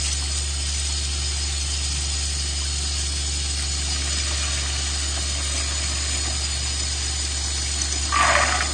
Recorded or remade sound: recorded